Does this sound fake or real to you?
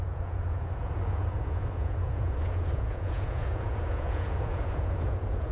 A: fake